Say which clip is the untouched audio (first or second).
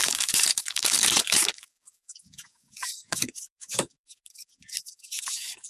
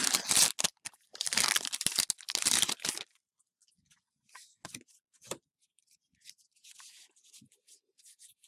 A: second